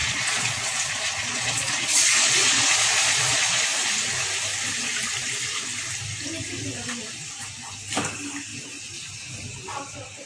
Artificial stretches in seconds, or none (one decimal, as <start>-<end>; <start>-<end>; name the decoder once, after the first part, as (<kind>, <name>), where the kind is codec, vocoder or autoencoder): 0.0-3.6 (vocoder, Vocos)